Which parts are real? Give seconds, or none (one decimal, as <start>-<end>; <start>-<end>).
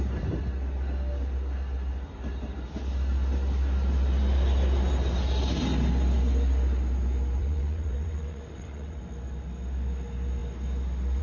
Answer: 0.0-7.4; 9.0-11.2